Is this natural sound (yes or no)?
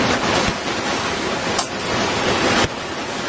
yes